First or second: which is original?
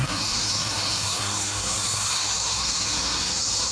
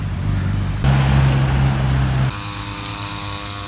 second